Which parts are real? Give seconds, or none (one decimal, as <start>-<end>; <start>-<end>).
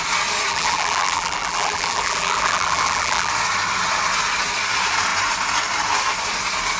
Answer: 0.0-0.5; 3.3-6.8